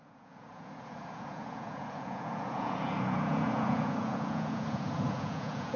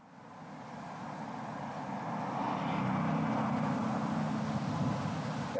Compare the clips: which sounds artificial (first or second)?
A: first